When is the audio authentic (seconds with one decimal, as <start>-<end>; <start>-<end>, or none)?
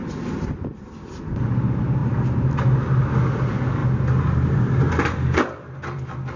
1.2-3.8